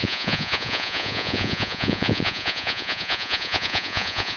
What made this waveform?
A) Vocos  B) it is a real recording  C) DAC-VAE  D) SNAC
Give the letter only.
A